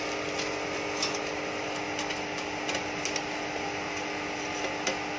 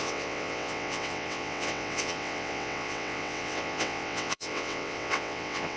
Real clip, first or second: first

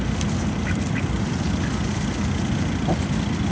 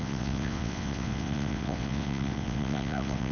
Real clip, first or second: first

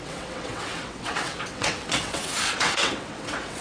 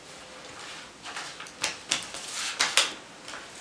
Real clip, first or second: second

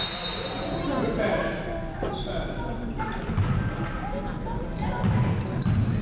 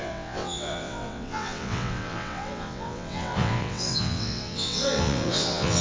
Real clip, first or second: first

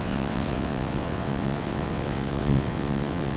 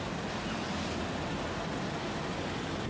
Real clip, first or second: second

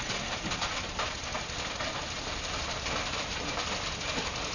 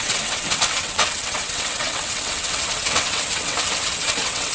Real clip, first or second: first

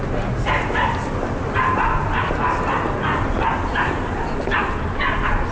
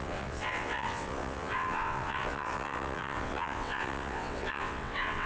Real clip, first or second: first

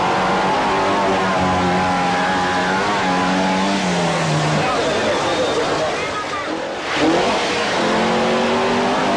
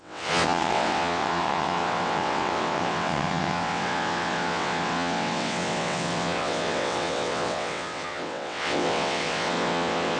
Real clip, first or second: first